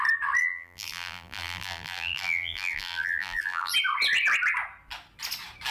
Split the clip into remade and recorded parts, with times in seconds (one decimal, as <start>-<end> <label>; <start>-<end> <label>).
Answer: 0.0-0.4 recorded; 0.4-3.7 remade; 3.7-5.7 recorded